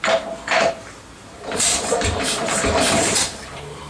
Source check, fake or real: fake